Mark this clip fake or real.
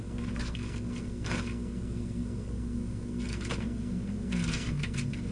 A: fake